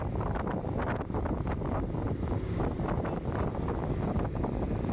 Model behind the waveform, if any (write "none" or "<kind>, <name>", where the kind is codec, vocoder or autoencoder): none